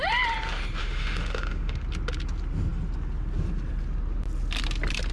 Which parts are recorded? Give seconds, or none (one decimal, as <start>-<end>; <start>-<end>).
0.0-0.8; 1.8-5.1